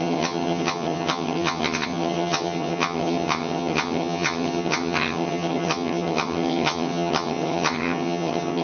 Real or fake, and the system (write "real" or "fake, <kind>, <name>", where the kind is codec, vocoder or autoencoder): fake, vocoder, HiFi-GAN